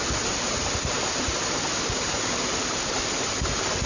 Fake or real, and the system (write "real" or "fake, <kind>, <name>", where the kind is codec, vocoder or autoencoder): real